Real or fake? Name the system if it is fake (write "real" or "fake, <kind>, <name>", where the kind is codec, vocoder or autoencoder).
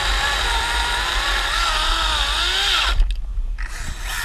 real